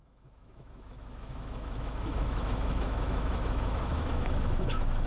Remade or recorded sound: remade